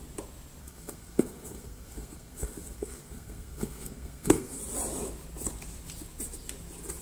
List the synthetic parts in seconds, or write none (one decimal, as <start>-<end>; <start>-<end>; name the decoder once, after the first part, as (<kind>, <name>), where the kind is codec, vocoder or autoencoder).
0.6-4.6 (codec, SNAC)